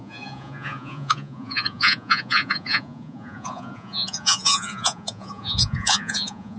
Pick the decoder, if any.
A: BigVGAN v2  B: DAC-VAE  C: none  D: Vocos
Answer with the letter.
D